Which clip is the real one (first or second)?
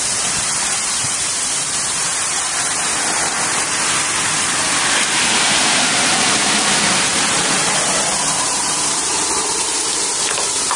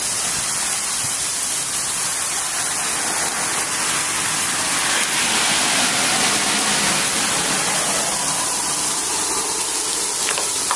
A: second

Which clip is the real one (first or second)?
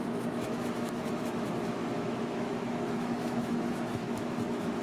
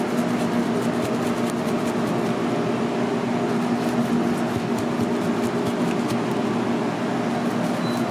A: second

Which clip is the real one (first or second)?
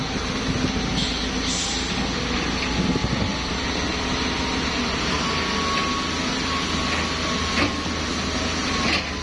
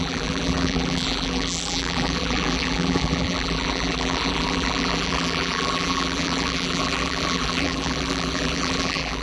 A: first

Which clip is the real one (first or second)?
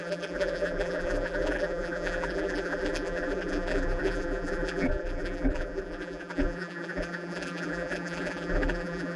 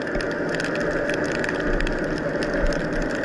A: second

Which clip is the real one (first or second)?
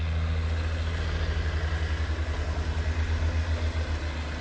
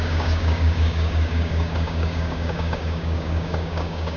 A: first